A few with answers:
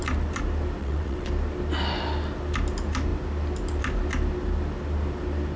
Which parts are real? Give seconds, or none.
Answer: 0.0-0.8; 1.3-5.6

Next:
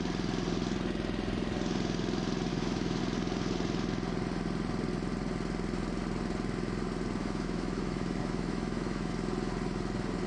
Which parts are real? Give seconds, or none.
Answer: 0.0-2.5; 3.0-7.2; 9.1-10.3

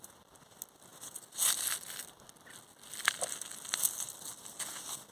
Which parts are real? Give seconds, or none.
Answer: 0.0-5.1

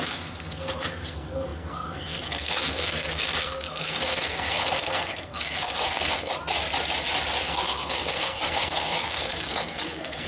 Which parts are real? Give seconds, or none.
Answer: 6.3-7.4